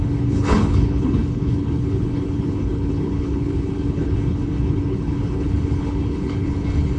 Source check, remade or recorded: remade